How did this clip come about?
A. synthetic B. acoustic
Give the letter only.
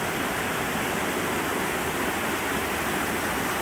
B